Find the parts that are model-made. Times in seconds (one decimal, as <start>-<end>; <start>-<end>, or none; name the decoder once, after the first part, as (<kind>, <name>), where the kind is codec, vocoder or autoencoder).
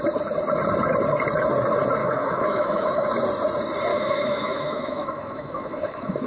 2.0-3.1 (autoencoder, DAC-VAE); 3.9-6.3